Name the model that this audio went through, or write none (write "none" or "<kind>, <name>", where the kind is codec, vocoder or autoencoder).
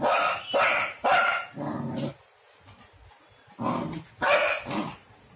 none